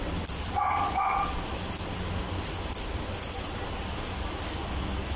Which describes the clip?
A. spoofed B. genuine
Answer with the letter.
B